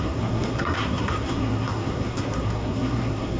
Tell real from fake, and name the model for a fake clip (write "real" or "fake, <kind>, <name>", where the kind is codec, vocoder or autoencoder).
fake, codec, SNAC